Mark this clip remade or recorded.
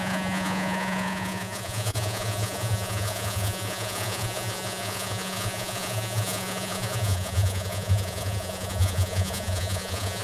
remade